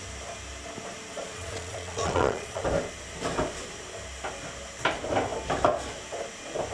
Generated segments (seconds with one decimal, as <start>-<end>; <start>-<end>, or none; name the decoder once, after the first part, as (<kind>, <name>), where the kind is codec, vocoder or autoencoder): 1.1-2.6 (vocoder, Vocos)